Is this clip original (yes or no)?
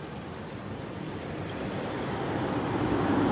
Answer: yes